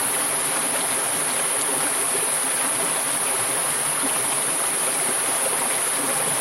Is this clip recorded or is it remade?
recorded